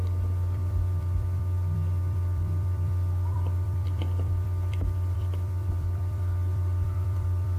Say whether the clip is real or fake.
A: fake